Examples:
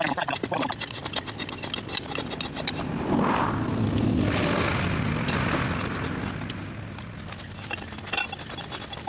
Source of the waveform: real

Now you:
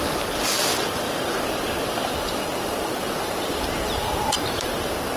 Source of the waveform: real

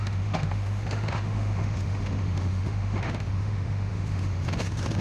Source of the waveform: fake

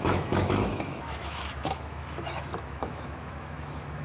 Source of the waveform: fake